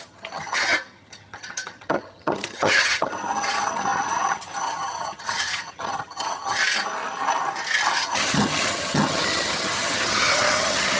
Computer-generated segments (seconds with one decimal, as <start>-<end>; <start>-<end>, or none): 0.0-6.6; 7.9-11.0